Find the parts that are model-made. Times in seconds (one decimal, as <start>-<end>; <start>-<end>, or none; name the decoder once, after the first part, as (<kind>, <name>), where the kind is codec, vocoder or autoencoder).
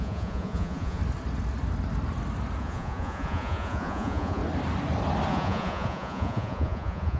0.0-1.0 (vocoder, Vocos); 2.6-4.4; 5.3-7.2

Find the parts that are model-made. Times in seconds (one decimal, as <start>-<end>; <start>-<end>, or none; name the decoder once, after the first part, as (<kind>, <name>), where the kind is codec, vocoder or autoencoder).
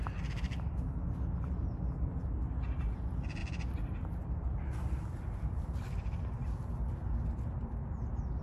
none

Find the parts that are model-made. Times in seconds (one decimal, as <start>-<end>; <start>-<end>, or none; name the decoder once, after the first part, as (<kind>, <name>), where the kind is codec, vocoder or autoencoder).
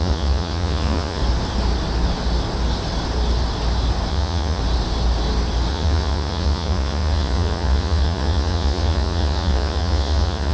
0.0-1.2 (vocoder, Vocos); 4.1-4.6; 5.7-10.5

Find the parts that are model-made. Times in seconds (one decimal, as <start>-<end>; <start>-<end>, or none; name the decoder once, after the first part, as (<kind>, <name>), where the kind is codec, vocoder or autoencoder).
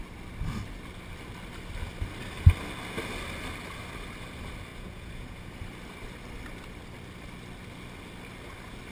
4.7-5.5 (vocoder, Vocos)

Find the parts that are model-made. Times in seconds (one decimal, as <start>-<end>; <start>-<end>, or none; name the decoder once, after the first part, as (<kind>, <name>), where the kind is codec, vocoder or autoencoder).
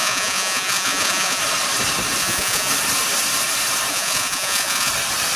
0.0-1.4 (vocoder, Vocos); 2.2-2.7; 3.9-4.9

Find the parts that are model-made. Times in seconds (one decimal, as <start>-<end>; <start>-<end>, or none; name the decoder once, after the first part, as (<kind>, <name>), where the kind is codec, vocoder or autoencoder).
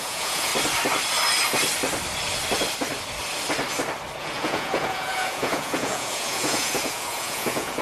0.0-0.5 (vocoder, Vocos); 4.2-7.8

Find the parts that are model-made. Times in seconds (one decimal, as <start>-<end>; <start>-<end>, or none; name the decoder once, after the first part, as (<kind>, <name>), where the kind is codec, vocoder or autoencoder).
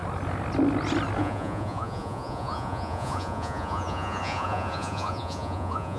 1.2-6.0 (vocoder, Vocos)